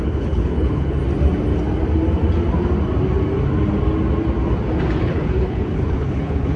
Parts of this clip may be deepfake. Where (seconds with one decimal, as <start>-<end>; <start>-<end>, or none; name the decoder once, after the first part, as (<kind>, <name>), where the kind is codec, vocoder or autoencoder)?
0.0-1.0 (codec, HILCodec); 5.0-6.6